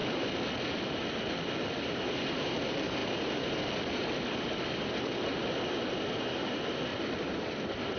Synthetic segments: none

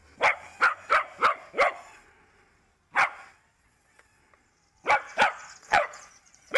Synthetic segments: 3.6-4.2 (vocoder, Vocos); 5.6-6.6

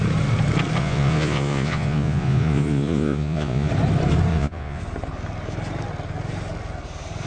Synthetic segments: 0.8-3.7 (vocoder, Vocos); 4.3-4.8

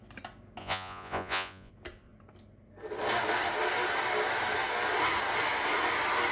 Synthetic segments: 0.6-1.7 (vocoder, Vocos)

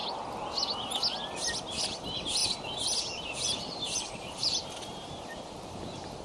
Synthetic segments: 1.6-2.4 (vocoder, BigVGAN v2); 3.2-6.2

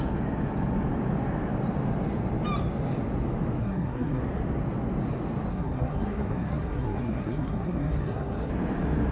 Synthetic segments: 3.6-4.2 (codec, SNAC); 5.5-8.5

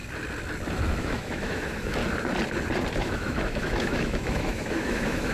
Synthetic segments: 1.0-2.0 (autoencoder, DAC-VAE); 3.0-5.3